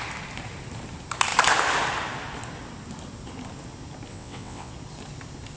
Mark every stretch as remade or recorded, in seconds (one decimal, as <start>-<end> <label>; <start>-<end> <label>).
0.0-4.1 recorded; 4.1-4.7 remade; 4.7-5.6 recorded